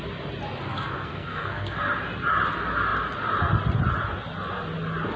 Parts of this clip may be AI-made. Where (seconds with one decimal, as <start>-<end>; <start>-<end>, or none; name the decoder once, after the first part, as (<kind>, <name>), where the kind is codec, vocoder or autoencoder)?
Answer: 0.7-1.8 (codec, SNAC)